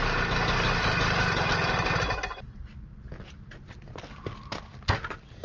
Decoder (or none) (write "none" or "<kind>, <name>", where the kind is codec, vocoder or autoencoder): none